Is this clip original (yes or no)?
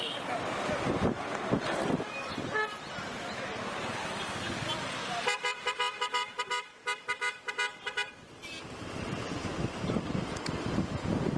yes